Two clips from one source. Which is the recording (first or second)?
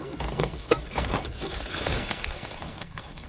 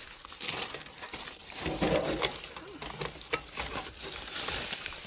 second